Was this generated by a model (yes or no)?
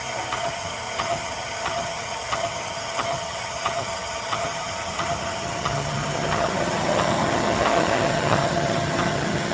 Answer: yes